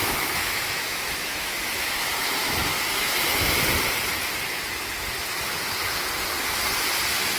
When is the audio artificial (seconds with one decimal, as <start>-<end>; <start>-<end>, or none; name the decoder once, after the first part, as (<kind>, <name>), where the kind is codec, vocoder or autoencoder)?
0.0-2.1 (autoencoder, DAC-VAE); 2.7-3.5